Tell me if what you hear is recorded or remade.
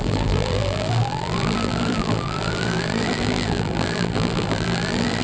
remade